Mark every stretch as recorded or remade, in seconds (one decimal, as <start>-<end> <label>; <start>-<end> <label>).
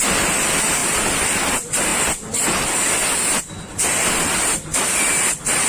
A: 0.0-5.7 recorded